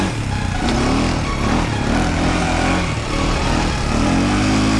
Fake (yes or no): no